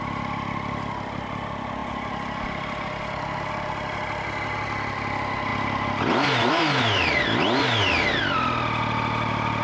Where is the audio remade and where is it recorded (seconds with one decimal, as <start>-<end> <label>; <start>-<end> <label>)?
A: 0.0-9.6 recorded